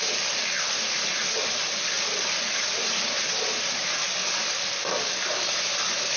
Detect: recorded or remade recorded